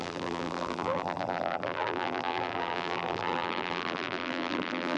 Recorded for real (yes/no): no